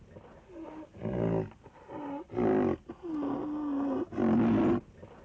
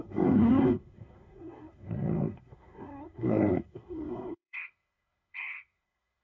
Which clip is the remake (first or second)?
second